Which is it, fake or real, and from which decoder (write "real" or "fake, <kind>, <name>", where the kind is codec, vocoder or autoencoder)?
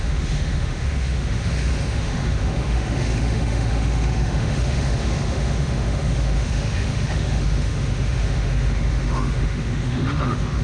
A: fake, autoencoder, DAC-VAE